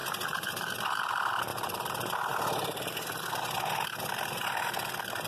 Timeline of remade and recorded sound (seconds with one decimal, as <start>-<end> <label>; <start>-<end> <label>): 0.0-1.1 remade; 1.1-1.5 recorded; 1.5-4.7 remade; 4.7-5.3 recorded